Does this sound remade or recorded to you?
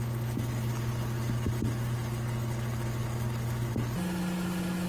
recorded